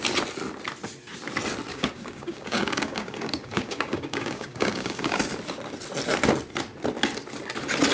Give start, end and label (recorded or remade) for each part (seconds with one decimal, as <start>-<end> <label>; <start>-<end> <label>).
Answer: 0.0-1.7 recorded; 1.7-5.2 remade; 5.2-7.9 recorded